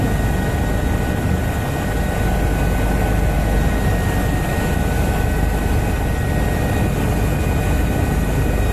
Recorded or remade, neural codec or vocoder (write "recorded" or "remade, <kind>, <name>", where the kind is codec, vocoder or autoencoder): recorded